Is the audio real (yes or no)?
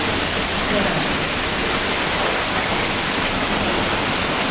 yes